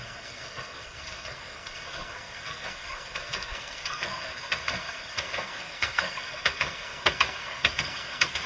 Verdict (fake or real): fake